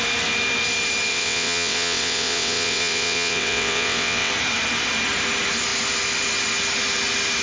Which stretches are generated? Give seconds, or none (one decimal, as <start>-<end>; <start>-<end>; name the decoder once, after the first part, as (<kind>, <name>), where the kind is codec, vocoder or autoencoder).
1.1-4.3 (vocoder, WaveNeXt)